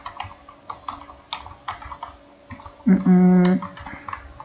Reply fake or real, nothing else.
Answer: real